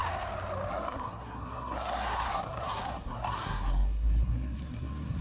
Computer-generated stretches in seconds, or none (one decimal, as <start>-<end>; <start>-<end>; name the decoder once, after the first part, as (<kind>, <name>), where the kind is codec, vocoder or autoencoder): 0.7-5.2 (codec, SNAC)